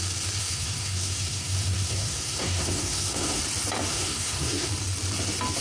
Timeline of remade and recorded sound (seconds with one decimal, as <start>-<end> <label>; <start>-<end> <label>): 0.0-0.4 recorded; 0.4-3.4 remade; 3.4-3.9 recorded; 3.9-4.7 remade; 4.7-5.6 recorded